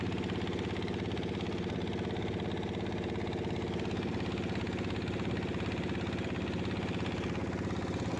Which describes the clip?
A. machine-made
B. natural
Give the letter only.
B